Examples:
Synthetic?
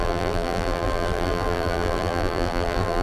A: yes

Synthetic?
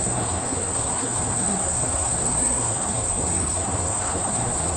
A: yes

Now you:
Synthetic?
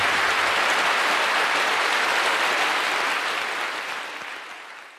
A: no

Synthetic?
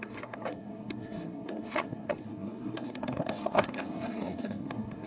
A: yes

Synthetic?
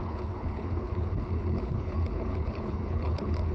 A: yes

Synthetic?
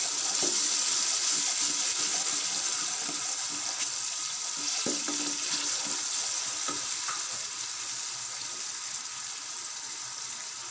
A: no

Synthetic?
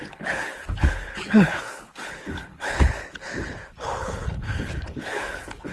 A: yes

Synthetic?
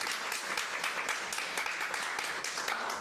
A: no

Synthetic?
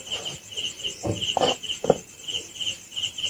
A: no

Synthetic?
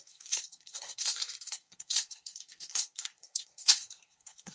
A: yes